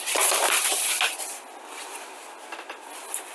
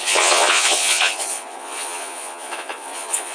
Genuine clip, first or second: first